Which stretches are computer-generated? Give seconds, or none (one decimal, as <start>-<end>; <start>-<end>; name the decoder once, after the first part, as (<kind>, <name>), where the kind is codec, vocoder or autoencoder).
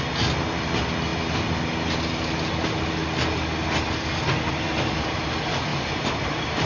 5.7-6.7 (vocoder, BigVGAN v2)